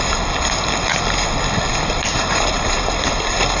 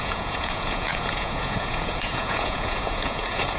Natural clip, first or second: first